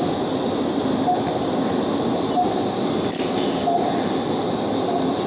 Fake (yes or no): no